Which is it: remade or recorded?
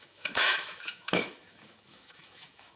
remade